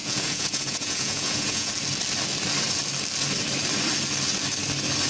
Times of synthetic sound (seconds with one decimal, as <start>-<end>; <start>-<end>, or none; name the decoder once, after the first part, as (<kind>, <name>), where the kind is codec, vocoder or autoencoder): 0.0-1.7 (vocoder, Vocos)